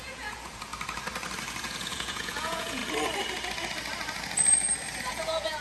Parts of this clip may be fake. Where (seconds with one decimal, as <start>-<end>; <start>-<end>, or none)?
0.0-0.7; 1.6-2.8; 5.1-5.6